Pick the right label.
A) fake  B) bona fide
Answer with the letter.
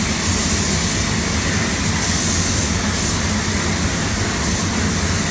B